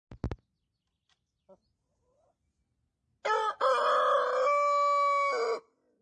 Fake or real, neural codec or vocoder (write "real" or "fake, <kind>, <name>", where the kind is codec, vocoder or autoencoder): real